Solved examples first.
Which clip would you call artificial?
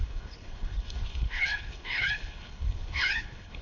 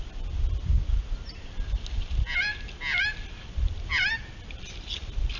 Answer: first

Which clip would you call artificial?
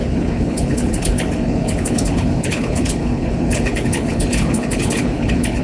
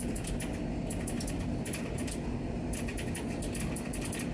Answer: first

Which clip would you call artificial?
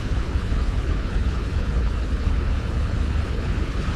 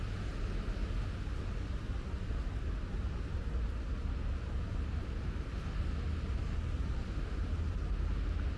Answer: first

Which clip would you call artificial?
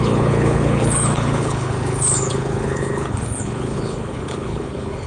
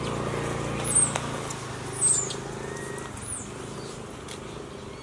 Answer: first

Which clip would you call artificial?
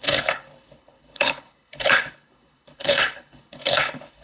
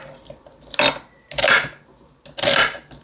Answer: first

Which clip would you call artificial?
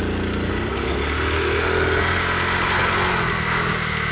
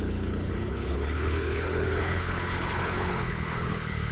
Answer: second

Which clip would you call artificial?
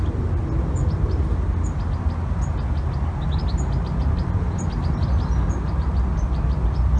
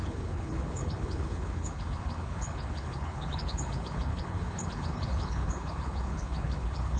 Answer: second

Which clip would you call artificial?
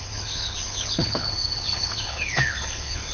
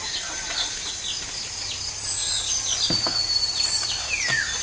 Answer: first